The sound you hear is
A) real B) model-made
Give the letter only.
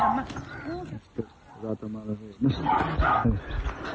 A